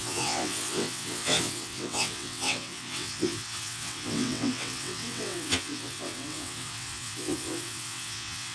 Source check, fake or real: fake